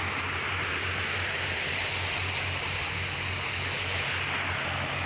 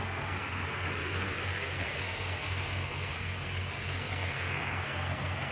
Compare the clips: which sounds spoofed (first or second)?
second